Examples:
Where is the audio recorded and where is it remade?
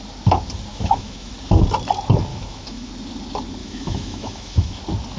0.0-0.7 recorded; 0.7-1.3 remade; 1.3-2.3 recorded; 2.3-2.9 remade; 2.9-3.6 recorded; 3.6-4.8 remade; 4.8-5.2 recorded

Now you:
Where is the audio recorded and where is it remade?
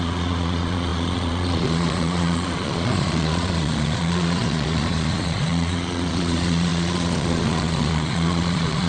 0.0-8.9 remade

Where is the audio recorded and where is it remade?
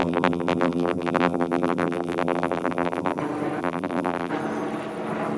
0.0-3.2 remade; 3.2-3.6 recorded; 3.6-4.3 remade; 4.3-5.4 recorded